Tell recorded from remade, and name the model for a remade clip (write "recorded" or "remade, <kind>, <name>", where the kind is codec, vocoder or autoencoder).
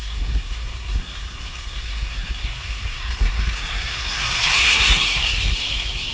remade, codec, SNAC